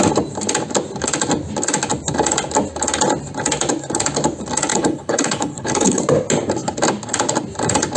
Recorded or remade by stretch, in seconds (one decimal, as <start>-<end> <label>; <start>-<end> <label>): 0.0-4.7 recorded; 4.7-6.0 remade; 6.0-8.0 recorded